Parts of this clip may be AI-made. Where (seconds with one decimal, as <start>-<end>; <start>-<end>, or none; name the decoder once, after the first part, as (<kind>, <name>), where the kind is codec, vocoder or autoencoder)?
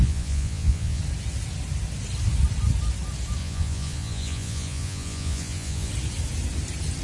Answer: 0.0-1.0 (vocoder, Vocos); 3.4-5.9